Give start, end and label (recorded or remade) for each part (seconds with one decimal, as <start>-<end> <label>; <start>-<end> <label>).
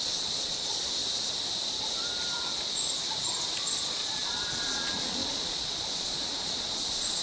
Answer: 0.0-1.0 remade; 1.0-2.4 recorded; 2.4-3.0 remade; 3.0-3.6 recorded; 3.6-7.2 remade